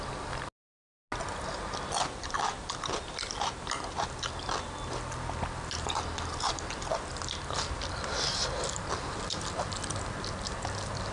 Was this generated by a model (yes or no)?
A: no